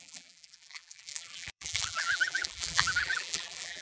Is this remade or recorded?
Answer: remade